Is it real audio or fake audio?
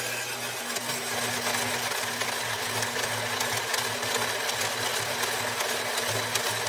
real